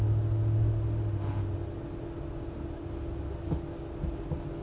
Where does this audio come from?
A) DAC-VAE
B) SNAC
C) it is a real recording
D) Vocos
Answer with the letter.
C